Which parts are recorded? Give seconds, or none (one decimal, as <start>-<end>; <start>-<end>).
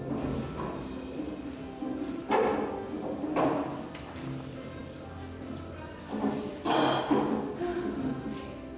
0.0-8.8